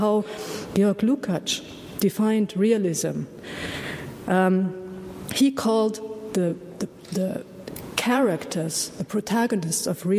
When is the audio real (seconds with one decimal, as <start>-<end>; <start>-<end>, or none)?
0.0-6.5; 9.0-10.2